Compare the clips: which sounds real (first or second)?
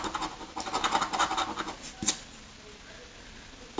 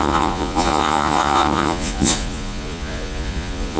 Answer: first